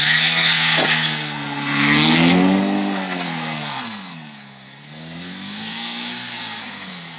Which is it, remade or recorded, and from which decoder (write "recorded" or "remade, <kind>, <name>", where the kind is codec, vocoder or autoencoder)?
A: remade, codec, SNAC